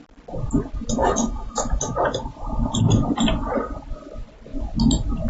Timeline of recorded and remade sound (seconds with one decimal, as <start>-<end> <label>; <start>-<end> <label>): 0.0-1.0 recorded; 1.0-1.8 remade; 1.8-5.3 recorded